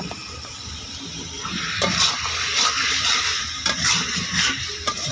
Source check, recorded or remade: recorded